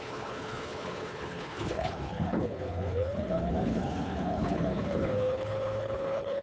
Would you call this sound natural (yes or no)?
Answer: no